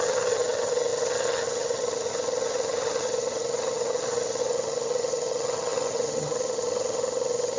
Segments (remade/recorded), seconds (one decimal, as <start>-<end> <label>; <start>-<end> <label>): 0.0-7.6 remade